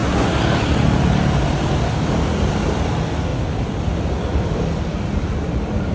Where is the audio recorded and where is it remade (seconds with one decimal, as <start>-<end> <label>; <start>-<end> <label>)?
0.0-3.3 recorded; 3.3-3.8 remade; 3.8-4.3 recorded; 4.3-5.9 remade